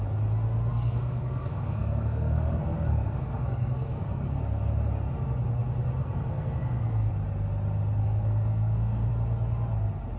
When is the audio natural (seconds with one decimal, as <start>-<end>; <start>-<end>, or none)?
0.0-0.7; 4.4-6.0; 7.1-8.0; 9.1-10.2

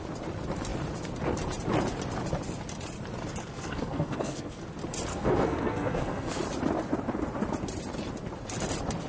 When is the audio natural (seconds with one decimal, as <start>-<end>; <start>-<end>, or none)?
0.0-3.4; 4.6-5.1; 6.4-9.1

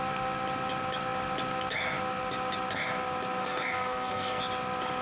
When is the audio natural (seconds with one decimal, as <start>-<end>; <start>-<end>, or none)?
0.0-3.4; 4.4-5.0

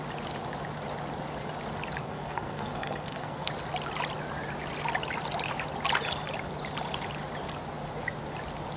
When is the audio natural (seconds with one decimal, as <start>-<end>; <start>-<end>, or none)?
0.0-2.0; 3.5-8.8

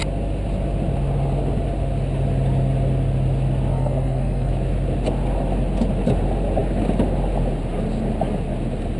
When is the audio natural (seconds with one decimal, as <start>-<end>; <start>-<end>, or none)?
0.0-3.7; 4.5-9.0

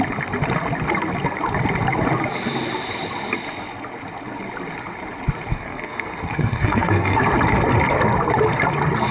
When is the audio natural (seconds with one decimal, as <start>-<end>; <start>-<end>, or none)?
0.0-5.5; 7.2-9.1

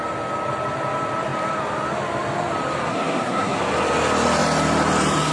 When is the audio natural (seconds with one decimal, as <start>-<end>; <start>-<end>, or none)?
0.0-2.9; 3.6-5.3